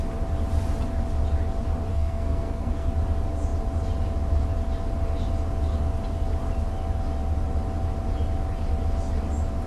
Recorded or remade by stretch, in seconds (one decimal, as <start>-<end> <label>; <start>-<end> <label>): 0.0-1.9 recorded; 1.9-2.9 remade; 2.9-9.7 recorded